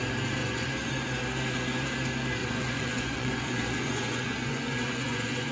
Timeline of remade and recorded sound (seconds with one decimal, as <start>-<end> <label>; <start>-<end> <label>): 0.0-0.4 recorded; 0.4-0.9 remade; 0.9-2.4 recorded; 2.4-5.5 remade